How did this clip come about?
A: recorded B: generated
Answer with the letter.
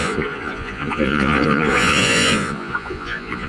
B